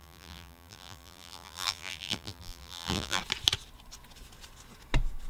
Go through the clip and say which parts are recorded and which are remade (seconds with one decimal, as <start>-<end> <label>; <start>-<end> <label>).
0.0-3.2 remade; 3.2-5.3 recorded